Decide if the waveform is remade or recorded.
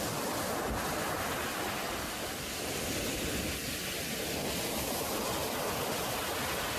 recorded